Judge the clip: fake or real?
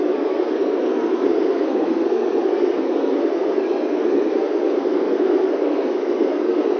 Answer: fake